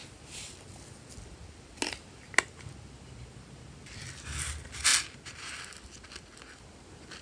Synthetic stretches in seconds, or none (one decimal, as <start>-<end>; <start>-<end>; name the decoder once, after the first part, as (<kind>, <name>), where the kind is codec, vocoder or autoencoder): none